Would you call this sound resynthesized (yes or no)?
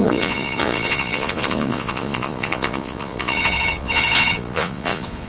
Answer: yes